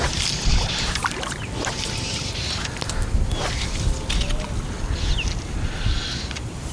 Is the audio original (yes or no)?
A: yes